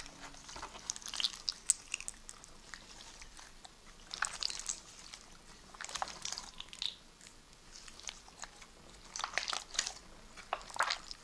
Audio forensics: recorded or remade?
recorded